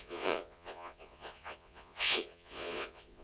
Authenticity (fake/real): fake